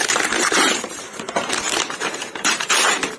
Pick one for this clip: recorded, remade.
remade